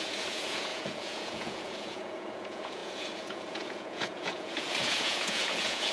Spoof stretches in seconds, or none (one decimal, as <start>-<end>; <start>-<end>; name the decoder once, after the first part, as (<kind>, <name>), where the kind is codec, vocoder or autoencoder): 0.0-5.9 (vocoder, Vocos)